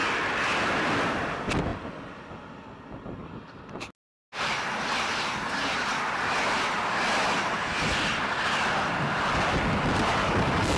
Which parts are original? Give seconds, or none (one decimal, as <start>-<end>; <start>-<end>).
0.0-10.2